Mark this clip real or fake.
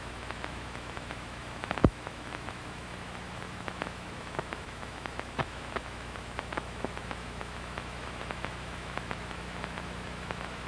fake